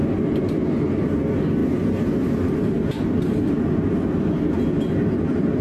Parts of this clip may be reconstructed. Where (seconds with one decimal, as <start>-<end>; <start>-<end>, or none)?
none